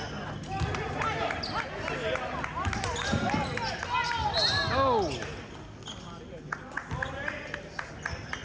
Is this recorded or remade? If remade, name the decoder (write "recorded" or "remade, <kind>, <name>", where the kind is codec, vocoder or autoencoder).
recorded